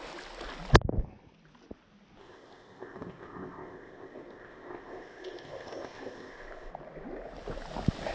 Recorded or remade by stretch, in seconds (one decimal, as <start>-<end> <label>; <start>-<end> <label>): 0.0-2.2 recorded; 2.2-6.7 remade; 6.7-8.1 recorded